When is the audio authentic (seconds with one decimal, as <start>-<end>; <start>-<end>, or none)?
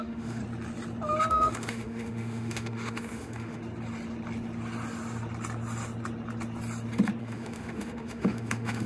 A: 0.4-1.3; 3.6-7.2